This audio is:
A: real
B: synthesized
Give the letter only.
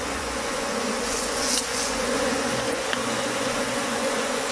B